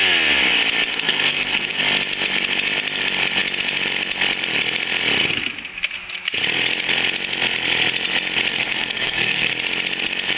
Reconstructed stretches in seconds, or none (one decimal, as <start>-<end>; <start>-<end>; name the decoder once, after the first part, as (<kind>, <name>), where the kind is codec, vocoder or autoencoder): 0.9-1.8 (codec, SNAC); 8.5-9.5